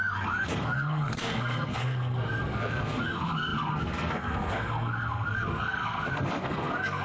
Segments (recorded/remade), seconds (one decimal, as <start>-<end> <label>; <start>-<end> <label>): 0.0-7.0 remade